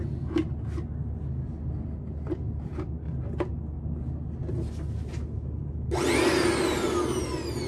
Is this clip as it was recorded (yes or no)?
yes